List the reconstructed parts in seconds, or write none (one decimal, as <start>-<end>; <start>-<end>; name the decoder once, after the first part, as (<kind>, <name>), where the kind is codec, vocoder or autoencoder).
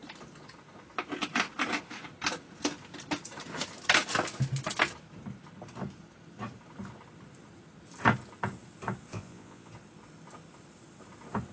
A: 9.1-9.7 (vocoder, Vocos)